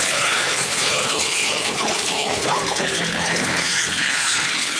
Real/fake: fake